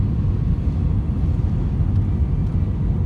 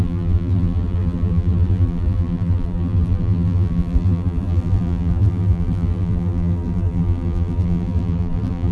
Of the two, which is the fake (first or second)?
second